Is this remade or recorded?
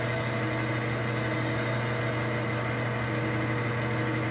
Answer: recorded